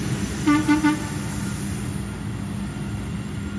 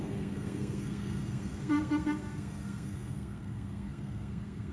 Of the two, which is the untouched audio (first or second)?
first